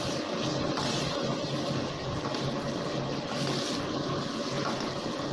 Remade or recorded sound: recorded